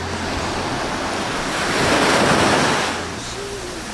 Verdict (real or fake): real